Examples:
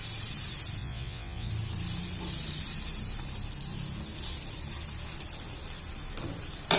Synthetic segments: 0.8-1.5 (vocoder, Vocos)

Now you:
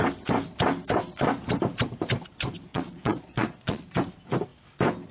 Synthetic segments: 2.7-3.8 (vocoder, Vocos)